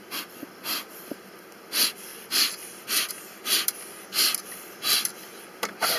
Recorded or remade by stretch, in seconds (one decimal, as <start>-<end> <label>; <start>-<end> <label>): 0.0-6.0 recorded